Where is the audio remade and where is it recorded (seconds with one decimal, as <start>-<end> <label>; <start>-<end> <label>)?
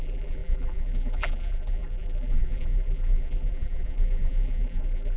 0.0-5.2 remade